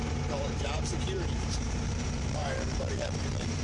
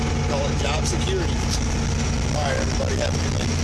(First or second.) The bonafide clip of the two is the second